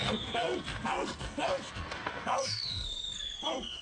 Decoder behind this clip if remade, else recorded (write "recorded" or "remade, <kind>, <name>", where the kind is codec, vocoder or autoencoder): remade, codec, SNAC